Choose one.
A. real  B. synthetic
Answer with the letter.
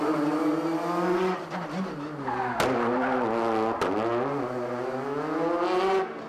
A